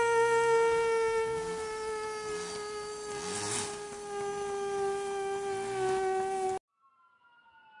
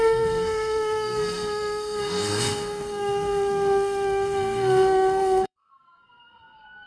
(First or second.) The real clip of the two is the first